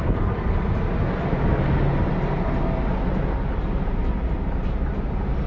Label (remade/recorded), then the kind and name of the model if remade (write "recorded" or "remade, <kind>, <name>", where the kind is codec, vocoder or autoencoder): recorded